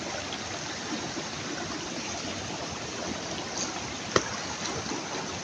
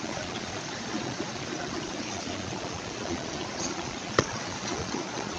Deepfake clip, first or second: second